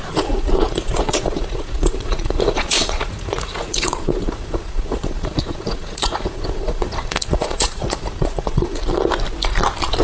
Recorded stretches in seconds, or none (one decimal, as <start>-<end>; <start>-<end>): 8.8-10.0